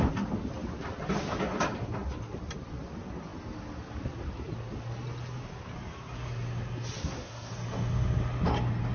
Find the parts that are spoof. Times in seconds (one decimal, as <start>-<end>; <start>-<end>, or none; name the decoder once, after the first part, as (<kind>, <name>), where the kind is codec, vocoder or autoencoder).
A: 7.0-7.5 (codec, SNAC)